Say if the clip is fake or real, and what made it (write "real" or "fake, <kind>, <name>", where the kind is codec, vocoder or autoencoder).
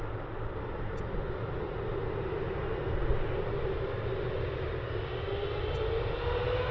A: real